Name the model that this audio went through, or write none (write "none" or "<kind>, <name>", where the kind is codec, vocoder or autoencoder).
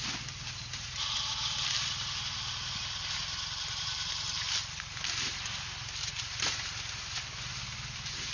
none